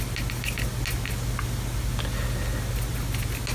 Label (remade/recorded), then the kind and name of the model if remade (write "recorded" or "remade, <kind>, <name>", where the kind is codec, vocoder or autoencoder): recorded